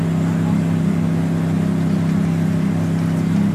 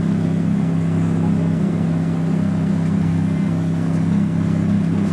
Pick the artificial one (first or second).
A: second